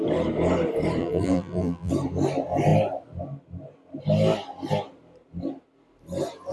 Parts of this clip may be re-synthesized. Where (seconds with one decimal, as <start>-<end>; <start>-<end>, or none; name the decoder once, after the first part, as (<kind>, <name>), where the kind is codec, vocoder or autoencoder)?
1.0-1.9 (vocoder, BigVGAN v2)